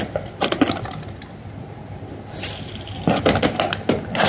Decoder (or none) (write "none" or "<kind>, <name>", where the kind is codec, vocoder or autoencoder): none